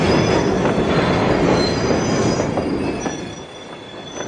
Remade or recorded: recorded